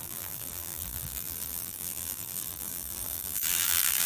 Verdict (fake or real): fake